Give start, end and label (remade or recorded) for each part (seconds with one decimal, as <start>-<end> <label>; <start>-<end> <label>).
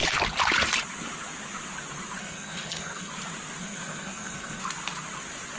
0.0-2.2 recorded; 2.2-3.1 remade; 3.1-3.6 recorded; 3.6-4.6 remade; 4.6-5.6 recorded